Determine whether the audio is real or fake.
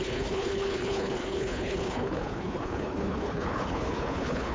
fake